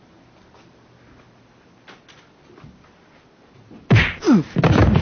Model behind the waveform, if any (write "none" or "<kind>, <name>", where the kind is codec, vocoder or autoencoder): none